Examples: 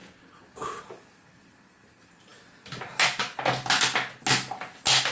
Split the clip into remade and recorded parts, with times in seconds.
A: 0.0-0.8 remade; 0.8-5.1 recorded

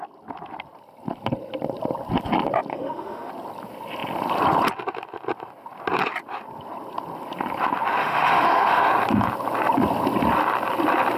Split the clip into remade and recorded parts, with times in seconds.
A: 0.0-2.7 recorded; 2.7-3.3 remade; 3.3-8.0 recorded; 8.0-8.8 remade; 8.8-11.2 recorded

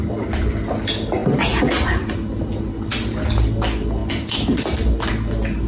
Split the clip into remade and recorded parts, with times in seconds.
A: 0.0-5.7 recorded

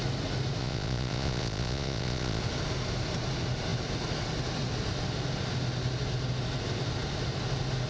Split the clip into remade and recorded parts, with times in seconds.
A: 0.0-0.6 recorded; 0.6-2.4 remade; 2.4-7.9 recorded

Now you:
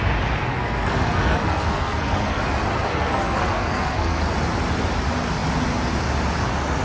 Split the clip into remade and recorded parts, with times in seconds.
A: 0.0-0.4 recorded; 0.4-2.4 remade; 2.4-2.9 recorded; 2.9-4.2 remade; 4.2-6.8 recorded